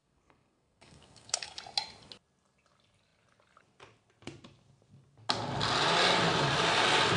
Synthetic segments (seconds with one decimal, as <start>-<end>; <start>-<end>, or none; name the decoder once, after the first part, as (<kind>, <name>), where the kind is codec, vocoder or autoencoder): 0.0-1.6 (codec, SNAC)